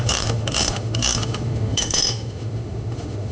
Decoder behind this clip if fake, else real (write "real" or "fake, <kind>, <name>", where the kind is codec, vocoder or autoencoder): fake, autoencoder, DAC-VAE